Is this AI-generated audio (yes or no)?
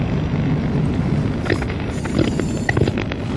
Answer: no